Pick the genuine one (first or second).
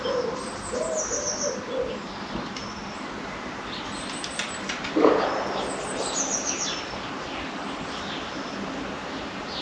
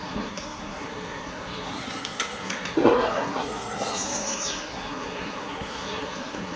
first